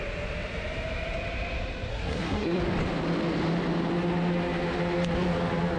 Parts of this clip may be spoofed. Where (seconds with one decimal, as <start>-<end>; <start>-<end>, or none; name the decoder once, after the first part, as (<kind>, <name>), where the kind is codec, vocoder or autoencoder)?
1.9-2.6 (codec, SNAC)